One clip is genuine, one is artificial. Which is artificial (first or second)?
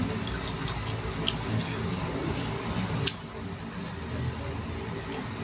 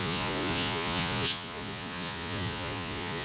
second